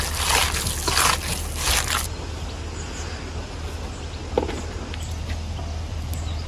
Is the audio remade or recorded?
recorded